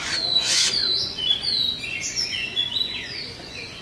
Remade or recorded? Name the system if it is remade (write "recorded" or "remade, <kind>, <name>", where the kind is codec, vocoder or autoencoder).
remade, vocoder, Vocos